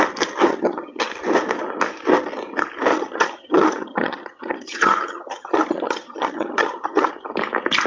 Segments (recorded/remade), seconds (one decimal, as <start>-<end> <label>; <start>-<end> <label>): 0.0-0.5 recorded; 0.5-1.0 remade; 1.0-2.9 recorded; 2.9-7.1 remade; 7.1-7.9 recorded